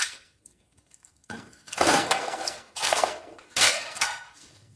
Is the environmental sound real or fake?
fake